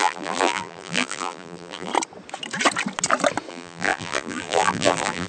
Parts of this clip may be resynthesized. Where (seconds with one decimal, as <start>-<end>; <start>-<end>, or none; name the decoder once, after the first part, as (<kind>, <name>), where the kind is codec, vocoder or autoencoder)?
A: 0.0-1.9 (vocoder, BigVGAN v2); 3.5-5.3